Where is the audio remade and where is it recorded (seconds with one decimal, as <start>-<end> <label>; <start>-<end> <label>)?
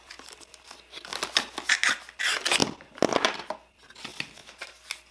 0.0-5.1 recorded